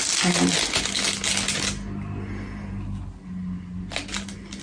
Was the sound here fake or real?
real